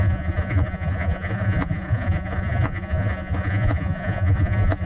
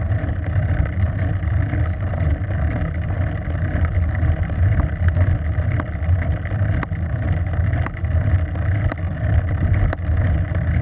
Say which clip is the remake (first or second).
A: first